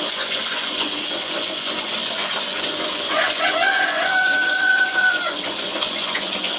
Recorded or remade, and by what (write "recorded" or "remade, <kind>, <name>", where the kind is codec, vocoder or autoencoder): remade, vocoder, Vocos